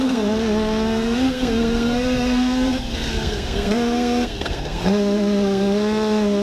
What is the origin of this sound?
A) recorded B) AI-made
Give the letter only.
B